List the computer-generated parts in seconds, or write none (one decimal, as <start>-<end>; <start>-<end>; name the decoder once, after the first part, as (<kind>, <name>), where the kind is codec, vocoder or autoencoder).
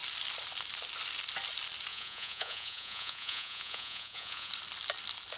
1.9-4.5 (vocoder, Vocos)